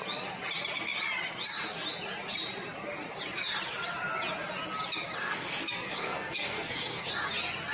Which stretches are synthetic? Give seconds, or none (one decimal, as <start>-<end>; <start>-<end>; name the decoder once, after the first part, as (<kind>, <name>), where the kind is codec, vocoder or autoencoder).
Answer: 5.2-7.1 (codec, SNAC)

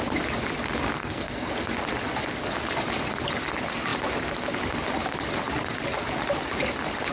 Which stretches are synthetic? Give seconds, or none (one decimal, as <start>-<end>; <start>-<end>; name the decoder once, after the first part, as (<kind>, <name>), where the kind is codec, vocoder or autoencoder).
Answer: 1.0-1.5 (codec, SNAC)

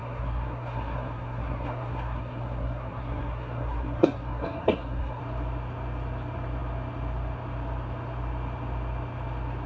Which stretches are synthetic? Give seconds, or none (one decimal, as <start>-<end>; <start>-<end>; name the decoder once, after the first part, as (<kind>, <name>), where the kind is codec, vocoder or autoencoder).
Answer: 0.0-5.2 (codec, SNAC)

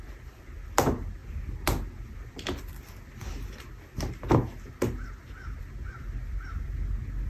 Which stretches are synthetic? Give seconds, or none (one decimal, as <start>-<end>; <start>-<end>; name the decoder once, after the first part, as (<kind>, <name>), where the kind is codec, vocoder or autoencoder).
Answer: none